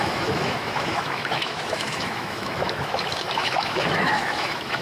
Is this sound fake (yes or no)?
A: yes